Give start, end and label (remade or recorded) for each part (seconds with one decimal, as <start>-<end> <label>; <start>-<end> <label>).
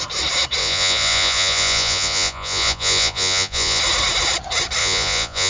0.0-0.6 recorded; 0.6-3.8 remade; 3.8-4.8 recorded; 4.8-5.5 remade